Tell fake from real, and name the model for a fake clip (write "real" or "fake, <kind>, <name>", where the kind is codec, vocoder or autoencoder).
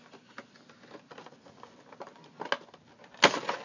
real